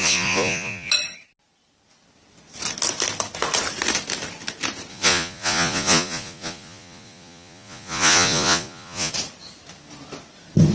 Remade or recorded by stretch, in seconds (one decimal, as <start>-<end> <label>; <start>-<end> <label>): 0.0-0.9 remade; 0.9-4.9 recorded; 4.9-9.1 remade; 9.1-10.7 recorded

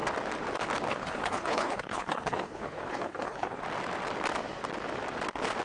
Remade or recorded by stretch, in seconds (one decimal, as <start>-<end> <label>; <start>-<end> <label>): 0.0-0.9 recorded; 0.9-3.6 remade; 3.6-5.6 recorded

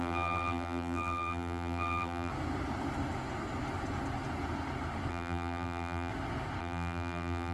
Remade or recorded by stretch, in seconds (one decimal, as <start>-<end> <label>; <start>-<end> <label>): 0.0-2.3 remade; 2.3-5.1 recorded; 5.1-6.1 remade; 6.1-6.6 recorded; 6.6-7.5 remade